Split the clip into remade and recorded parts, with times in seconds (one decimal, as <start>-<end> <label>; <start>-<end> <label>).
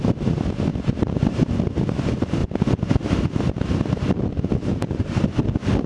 0.0-0.7 recorded; 0.7-1.4 remade; 1.4-4.7 recorded; 4.7-5.4 remade; 5.4-5.9 recorded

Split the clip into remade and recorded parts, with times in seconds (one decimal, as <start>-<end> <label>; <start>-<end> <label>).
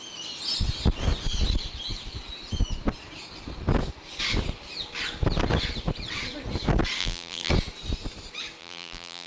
0.0-7.0 recorded; 7.0-7.5 remade; 7.5-8.6 recorded; 8.6-9.3 remade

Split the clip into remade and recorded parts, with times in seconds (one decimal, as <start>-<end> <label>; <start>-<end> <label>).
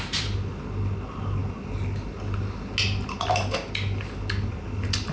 0.0-5.1 recorded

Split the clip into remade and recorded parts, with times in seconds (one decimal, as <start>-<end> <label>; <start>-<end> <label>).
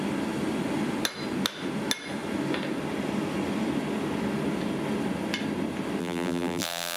0.0-6.0 recorded; 6.0-7.0 remade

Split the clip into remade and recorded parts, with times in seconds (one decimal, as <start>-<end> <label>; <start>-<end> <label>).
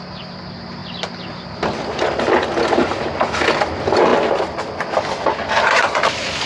0.0-6.5 recorded